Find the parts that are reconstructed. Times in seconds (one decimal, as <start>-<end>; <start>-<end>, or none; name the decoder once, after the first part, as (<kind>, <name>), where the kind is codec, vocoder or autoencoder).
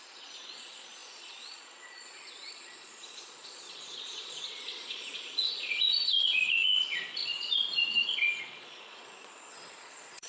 0.0-10.3 (vocoder, Vocos)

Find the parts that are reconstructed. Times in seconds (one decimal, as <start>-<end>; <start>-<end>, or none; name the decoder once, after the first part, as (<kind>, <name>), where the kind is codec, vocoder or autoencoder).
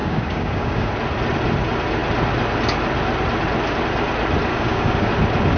0.0-0.9 (codec, DAC); 4.5-5.1